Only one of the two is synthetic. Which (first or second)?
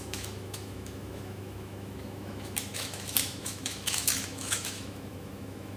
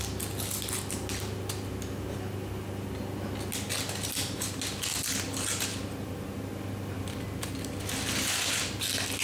first